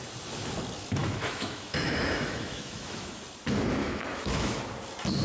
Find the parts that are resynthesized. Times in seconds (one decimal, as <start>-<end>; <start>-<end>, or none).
1.0-3.2; 3.8-4.6

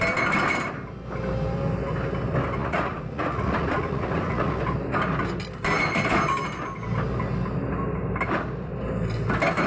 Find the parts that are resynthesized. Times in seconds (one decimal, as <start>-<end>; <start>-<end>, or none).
2.6-4.6

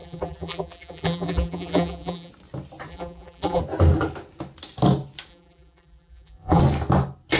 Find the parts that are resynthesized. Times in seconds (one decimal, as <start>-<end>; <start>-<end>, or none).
0.0-2.3; 2.9-3.6; 5.3-6.6

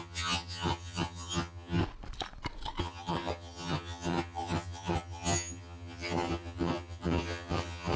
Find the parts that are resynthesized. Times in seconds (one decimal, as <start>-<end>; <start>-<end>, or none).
0.0-1.8; 2.8-8.0